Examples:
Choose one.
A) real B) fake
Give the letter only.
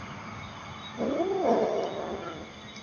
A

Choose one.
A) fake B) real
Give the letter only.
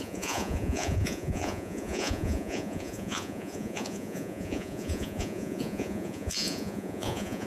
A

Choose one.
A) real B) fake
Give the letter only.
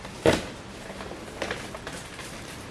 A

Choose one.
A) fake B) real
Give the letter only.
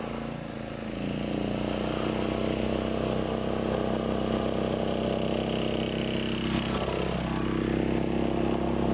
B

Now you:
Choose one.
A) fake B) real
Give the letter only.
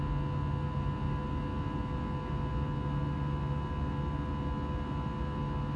B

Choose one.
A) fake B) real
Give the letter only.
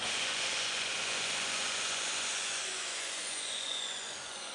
A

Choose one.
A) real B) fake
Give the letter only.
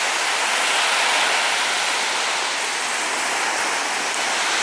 A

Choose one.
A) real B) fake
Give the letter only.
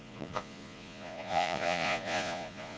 B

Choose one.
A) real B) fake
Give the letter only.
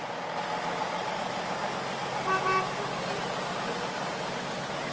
A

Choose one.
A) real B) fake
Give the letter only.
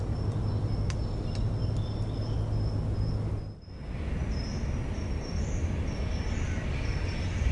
A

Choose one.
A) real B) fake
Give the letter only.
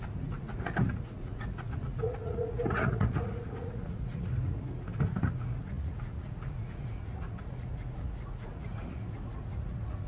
B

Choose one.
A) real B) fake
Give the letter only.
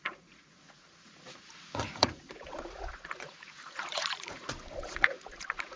B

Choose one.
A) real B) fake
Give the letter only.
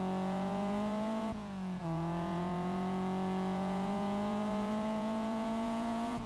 B